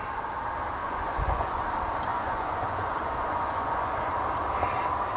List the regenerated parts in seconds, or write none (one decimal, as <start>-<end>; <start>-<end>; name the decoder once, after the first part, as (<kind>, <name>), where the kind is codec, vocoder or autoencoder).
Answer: 0.8-1.6 (vocoder, Vocos); 2.1-4.1